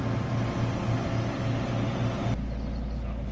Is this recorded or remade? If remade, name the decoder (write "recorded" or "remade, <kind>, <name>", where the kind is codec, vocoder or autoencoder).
recorded